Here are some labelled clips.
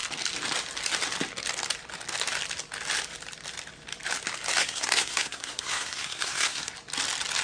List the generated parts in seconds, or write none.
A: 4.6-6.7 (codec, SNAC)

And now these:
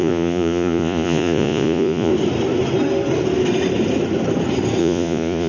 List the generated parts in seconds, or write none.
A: 0.0-2.1 (vocoder, Vocos); 4.8-5.5

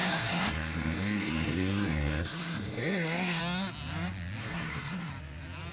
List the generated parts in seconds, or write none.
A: 0.0-3.4 (codec, SNAC); 4.4-5.1